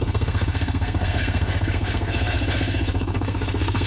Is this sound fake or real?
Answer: fake